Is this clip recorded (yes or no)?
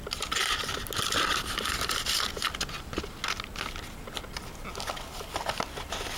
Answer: yes